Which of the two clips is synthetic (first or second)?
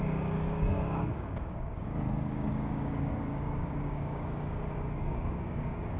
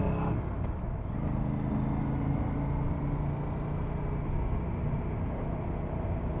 first